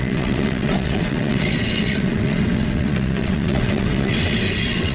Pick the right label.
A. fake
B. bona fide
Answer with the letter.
A